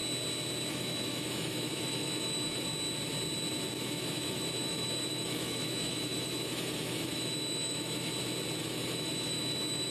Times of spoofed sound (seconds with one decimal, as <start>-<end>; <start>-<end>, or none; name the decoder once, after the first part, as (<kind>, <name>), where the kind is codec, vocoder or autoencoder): 0.7-2.7 (autoencoder, DAC-VAE); 3.8-8.1; 8.6-9.9